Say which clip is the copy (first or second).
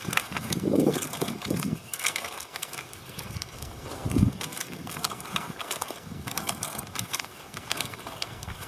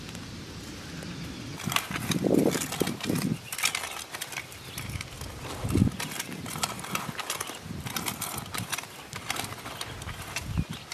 first